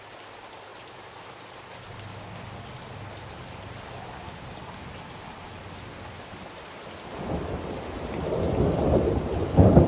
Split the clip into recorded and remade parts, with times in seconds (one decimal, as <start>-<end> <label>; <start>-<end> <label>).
0.0-9.9 recorded